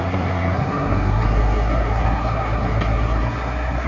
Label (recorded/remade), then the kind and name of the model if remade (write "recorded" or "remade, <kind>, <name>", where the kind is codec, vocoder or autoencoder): remade, codec, SNAC